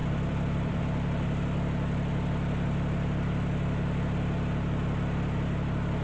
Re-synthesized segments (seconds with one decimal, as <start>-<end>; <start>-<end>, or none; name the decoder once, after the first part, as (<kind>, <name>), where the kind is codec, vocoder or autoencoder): 0.0-0.8 (vocoder, BigVGAN v2)